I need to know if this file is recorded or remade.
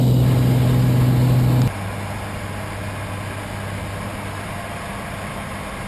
recorded